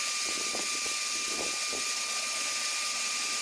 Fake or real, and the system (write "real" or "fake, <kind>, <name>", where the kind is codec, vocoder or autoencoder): real